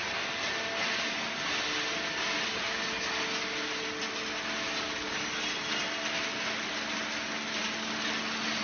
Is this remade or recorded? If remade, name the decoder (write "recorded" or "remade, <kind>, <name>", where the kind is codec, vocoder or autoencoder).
recorded